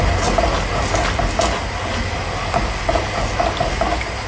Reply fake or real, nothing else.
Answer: real